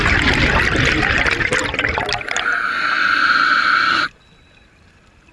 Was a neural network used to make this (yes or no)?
no